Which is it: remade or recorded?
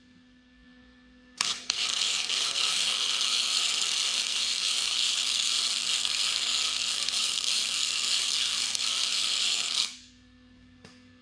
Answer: remade